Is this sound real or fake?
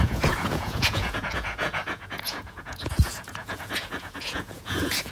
fake